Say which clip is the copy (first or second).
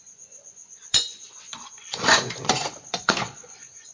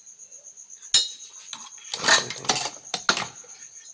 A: first